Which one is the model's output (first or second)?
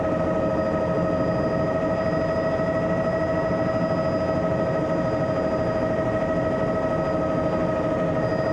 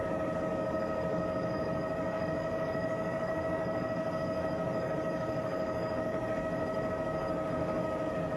second